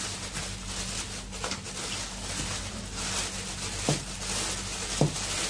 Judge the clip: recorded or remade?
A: recorded